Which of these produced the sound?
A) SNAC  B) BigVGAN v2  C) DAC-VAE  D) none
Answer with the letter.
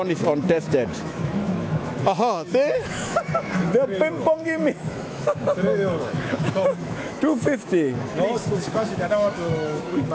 C